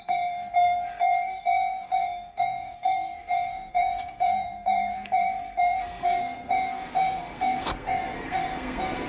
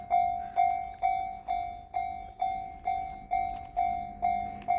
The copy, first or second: first